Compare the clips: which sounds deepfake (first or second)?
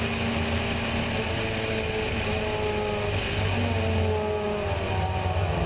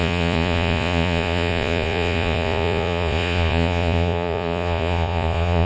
second